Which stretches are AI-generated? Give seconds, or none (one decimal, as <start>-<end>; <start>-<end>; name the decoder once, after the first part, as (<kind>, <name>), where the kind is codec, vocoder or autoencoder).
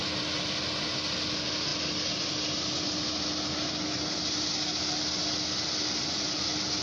none